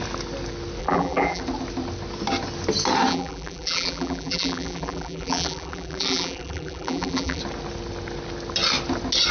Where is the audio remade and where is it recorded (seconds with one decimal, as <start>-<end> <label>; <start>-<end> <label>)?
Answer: 0.0-0.8 recorded; 0.8-1.4 remade; 1.4-3.1 recorded; 3.1-7.4 remade; 7.4-9.3 recorded